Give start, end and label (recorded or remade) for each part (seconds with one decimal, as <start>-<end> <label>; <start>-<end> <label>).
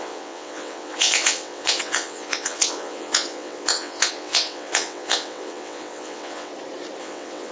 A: 0.0-6.5 remade; 6.5-7.0 recorded; 7.0-7.5 remade